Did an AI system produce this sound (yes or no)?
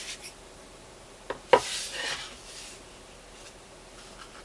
no